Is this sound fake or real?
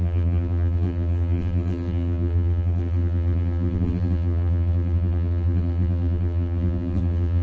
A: fake